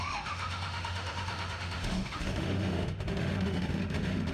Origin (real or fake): fake